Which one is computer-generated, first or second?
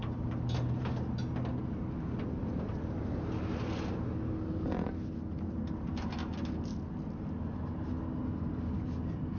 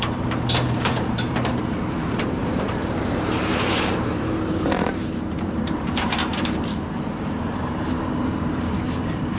second